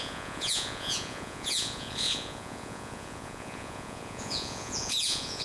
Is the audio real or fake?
fake